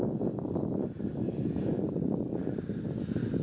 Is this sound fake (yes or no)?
no